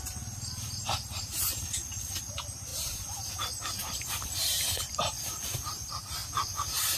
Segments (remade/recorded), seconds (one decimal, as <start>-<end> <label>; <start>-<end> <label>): 0.0-2.7 recorded; 2.7-3.3 remade; 3.3-6.2 recorded; 6.2-7.0 remade